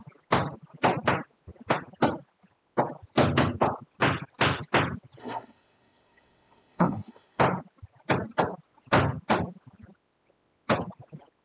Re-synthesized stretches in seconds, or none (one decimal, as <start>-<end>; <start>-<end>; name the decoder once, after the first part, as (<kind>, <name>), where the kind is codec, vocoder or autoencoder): 5.2-7.4 (codec, SNAC)